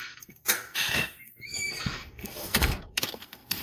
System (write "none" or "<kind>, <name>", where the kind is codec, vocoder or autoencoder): codec, SNAC